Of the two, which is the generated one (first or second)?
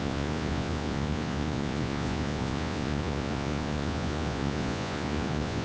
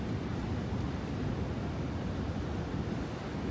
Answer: first